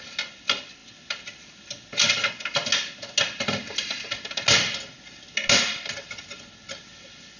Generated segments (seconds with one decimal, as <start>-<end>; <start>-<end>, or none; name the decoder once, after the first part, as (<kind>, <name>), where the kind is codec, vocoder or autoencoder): none